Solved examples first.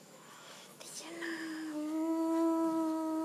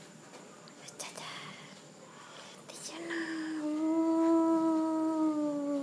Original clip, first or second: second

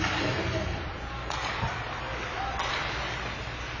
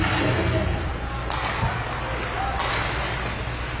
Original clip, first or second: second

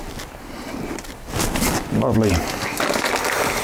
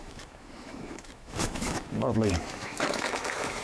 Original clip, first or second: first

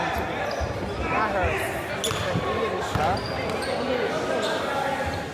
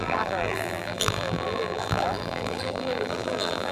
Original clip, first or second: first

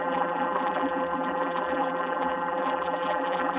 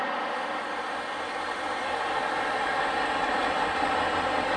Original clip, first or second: second